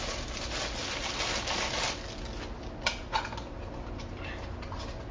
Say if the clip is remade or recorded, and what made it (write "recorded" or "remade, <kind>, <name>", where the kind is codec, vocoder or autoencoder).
recorded